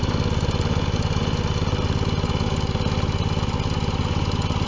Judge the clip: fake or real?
real